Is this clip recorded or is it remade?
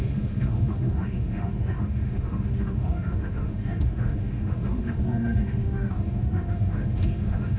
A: remade